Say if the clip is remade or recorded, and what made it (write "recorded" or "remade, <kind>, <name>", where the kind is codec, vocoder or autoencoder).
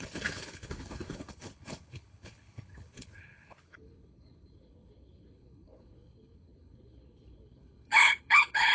remade, codec, HILCodec